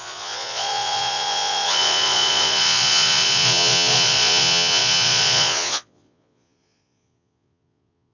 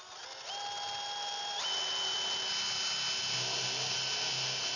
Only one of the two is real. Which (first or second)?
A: second